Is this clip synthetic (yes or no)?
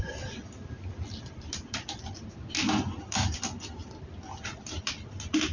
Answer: no